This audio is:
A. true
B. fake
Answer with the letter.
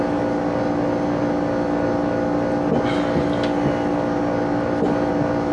A